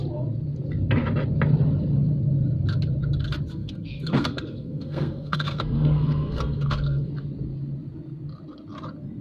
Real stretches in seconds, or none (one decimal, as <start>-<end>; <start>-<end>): 0.0-3.5; 7.1-9.2